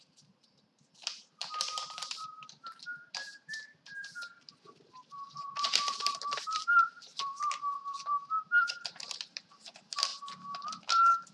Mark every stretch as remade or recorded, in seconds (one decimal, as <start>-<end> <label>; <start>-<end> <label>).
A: 0.0-10.1 remade; 10.1-10.8 recorded; 10.8-11.3 remade